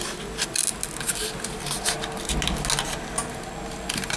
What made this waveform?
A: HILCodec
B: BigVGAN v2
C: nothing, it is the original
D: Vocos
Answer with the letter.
C